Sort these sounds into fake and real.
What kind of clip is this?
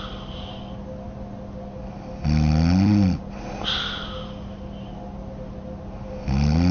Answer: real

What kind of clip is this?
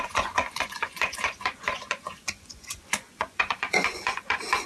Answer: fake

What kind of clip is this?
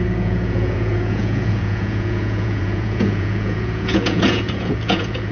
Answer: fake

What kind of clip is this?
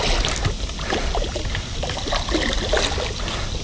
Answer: real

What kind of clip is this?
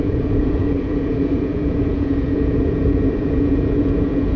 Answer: fake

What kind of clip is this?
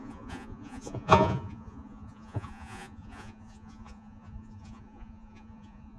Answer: fake